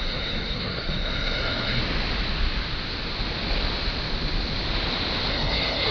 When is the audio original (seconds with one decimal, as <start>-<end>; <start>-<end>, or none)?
1.8-5.3